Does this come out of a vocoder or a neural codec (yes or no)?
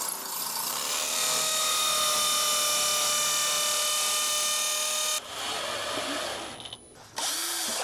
no